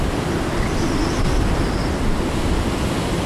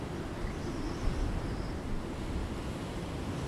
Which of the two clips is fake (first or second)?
first